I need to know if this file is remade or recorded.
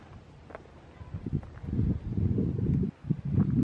recorded